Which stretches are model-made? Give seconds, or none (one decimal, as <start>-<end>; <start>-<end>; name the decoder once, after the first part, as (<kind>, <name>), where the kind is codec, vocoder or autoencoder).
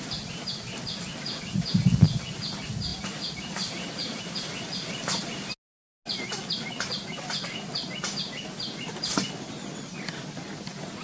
none